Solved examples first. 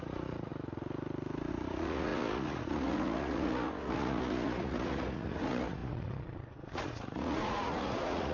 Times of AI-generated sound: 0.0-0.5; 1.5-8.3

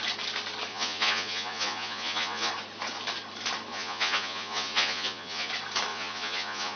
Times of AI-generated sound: 0.7-2.5; 3.7-5.5; 5.9-6.8

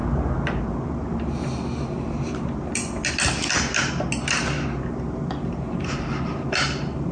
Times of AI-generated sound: none

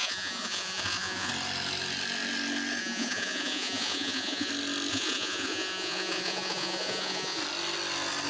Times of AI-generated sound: 0.0-1.3; 2.8-4.5; 4.9-7.4

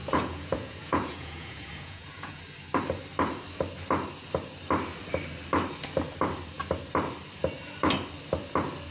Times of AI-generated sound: 0.0-2.4

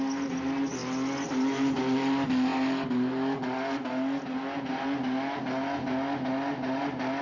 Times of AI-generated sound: none

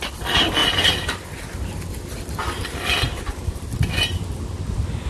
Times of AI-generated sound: none

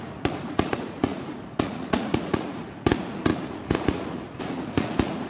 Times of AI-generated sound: 0.0-5.3